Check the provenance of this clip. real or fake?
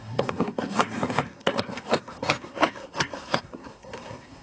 fake